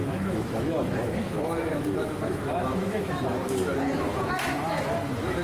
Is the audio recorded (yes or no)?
no